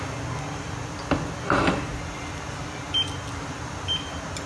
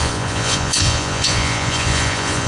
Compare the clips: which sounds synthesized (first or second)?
second